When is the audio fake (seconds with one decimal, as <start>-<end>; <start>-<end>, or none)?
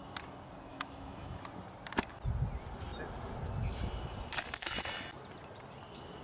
0.7-1.4